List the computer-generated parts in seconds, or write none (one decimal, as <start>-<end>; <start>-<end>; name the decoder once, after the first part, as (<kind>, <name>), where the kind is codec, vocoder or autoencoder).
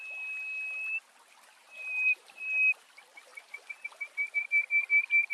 1.6-2.4 (vocoder, BigVGAN v2)